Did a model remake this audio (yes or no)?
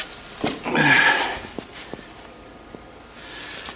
no